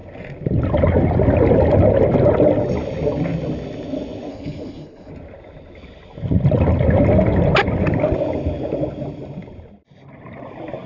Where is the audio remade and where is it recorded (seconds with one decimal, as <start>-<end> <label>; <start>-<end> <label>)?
0.0-4.3 recorded; 4.3-5.1 remade; 5.1-10.9 recorded